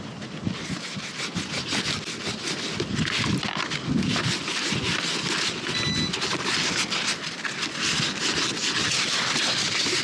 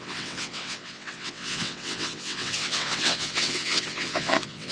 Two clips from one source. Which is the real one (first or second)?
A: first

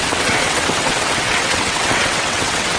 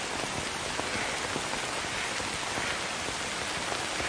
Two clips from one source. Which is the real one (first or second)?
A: second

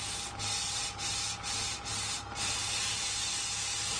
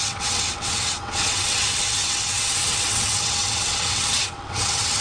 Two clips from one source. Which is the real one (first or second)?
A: first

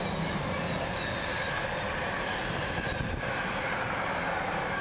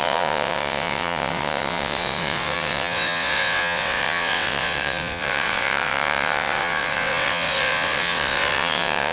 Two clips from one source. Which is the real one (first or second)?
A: first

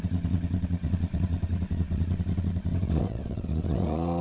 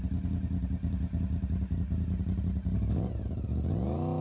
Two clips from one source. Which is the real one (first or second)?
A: second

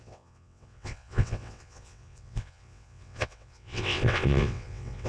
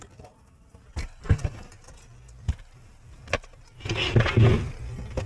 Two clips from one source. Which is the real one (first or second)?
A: second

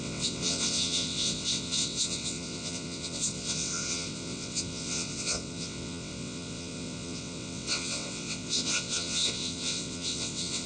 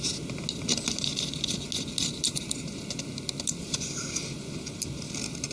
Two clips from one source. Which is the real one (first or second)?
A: second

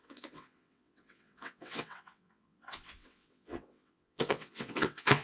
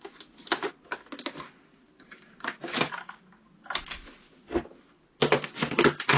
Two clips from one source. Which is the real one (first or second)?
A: second